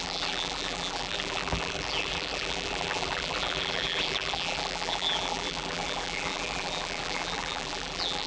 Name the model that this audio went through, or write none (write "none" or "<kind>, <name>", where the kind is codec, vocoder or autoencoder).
vocoder, BigVGAN v2